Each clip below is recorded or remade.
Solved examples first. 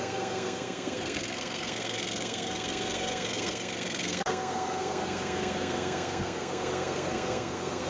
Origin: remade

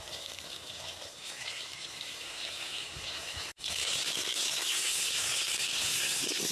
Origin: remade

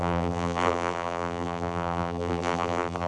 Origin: remade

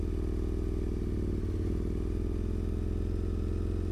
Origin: recorded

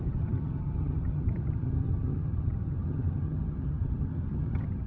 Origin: remade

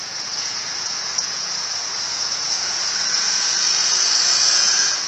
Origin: remade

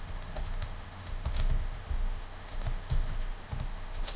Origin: remade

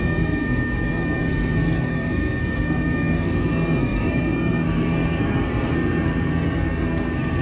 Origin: remade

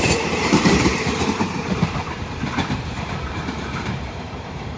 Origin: remade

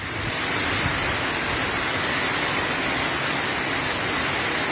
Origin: recorded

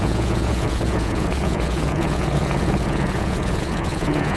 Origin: remade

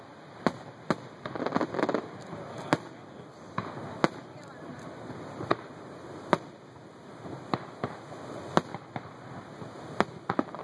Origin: recorded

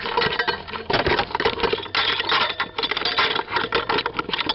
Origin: recorded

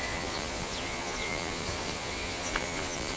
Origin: remade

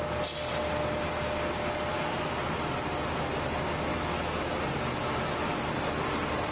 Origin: recorded